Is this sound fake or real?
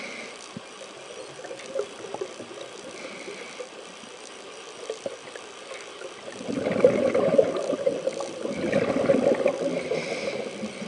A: real